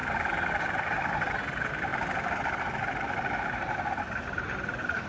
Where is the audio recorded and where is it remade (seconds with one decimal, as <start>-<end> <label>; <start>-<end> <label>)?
0.0-0.6 recorded; 0.6-1.9 remade; 1.9-3.9 recorded; 3.9-5.1 remade